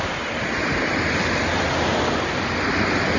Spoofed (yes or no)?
no